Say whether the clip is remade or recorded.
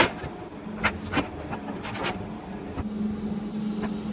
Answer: recorded